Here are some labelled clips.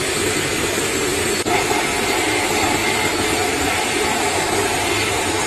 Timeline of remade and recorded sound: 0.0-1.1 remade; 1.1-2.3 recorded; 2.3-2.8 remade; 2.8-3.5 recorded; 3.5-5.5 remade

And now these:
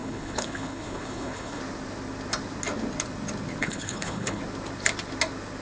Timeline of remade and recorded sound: 0.0-1.6 remade; 1.6-3.6 recorded; 3.6-4.4 remade; 4.4-5.6 recorded